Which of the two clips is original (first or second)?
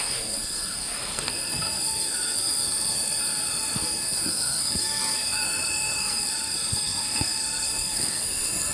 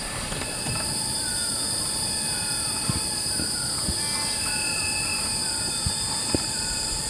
second